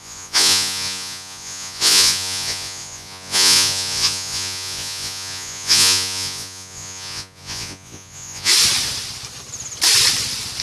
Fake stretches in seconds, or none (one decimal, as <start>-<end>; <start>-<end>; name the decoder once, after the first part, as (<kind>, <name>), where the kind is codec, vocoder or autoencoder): 0.0-8.5 (vocoder, Vocos)